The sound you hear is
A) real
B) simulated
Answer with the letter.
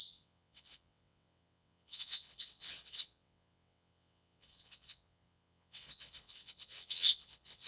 B